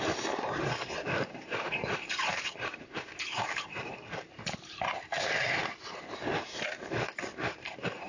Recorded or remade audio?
remade